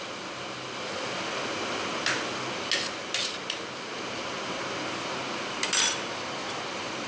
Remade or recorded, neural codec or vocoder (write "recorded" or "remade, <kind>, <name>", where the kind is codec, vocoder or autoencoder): recorded